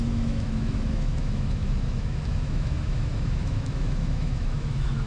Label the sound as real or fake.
fake